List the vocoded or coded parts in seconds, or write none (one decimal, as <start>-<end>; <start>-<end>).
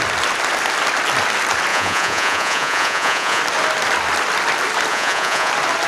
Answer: 1.7-3.4; 4.9-5.5